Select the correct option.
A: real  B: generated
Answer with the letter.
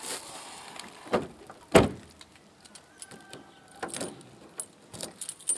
A